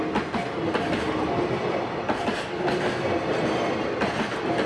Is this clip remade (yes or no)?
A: no